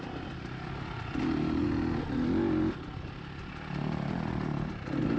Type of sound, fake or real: real